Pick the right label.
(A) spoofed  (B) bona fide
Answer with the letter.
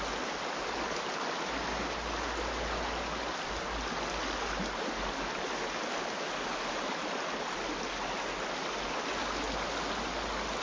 B